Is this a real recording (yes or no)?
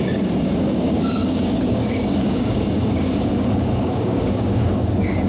no